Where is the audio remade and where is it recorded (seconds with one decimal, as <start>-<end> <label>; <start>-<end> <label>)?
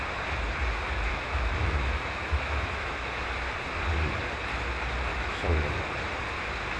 0.0-1.1 recorded; 1.1-3.3 remade; 3.3-5.1 recorded; 5.1-5.9 remade; 5.9-6.8 recorded